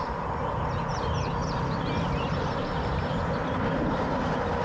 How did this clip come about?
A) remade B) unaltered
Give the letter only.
B